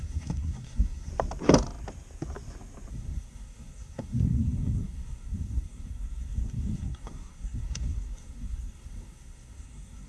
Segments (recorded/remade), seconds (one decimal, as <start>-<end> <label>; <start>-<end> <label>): 0.0-1.1 remade; 1.1-2.9 recorded; 2.9-10.1 remade

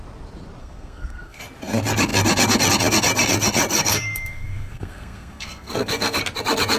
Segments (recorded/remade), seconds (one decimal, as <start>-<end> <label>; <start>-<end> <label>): 0.0-0.6 recorded; 0.6-1.4 remade; 1.4-3.8 recorded; 3.8-6.2 remade; 6.2-6.8 recorded

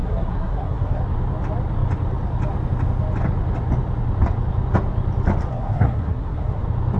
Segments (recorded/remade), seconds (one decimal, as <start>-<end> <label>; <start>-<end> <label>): 0.0-1.0 remade; 1.0-5.5 recorded; 5.5-6.6 remade; 6.6-7.0 recorded

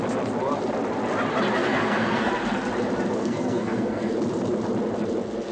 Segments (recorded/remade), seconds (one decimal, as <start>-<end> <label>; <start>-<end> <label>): 0.0-1.6 recorded; 1.6-2.3 remade; 2.3-3.2 recorded; 3.2-4.1 remade; 4.1-5.5 recorded

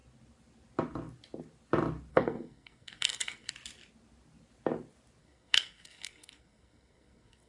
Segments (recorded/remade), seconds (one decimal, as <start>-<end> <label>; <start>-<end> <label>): 0.0-2.1 recorded; 2.1-3.5 remade; 3.5-5.2 recorded; 5.2-7.5 remade

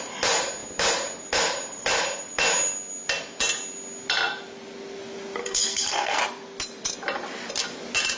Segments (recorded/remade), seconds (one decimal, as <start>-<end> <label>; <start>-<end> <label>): 0.0-5.4 recorded; 5.4-6.2 remade; 6.2-8.2 recorded